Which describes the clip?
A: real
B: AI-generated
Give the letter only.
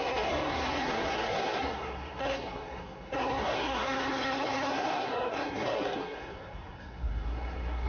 B